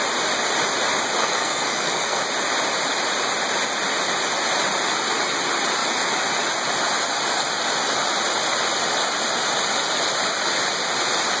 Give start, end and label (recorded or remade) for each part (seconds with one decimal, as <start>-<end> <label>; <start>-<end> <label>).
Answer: 0.0-1.2 recorded; 1.2-2.2 remade; 2.2-11.4 recorded